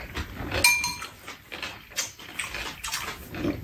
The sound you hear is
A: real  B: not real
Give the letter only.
A